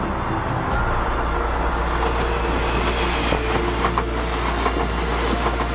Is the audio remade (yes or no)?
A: no